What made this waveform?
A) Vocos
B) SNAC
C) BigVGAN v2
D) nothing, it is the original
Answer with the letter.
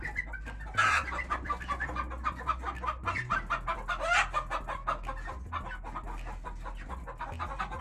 D